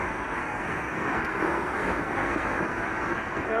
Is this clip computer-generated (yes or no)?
yes